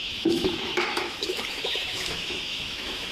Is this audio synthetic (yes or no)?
yes